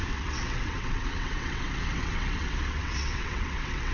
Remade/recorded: remade